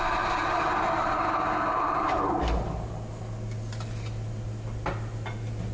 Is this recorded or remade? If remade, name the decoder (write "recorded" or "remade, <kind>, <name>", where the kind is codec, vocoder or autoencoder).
recorded